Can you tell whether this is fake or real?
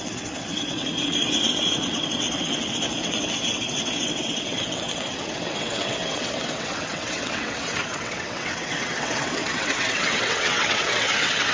fake